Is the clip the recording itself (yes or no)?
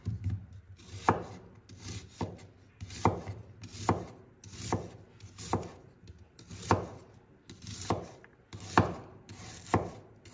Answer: yes